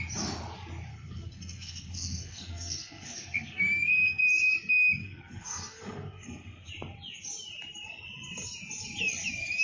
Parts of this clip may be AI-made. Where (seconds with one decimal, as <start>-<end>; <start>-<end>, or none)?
0.9-4.2; 5.0-6.7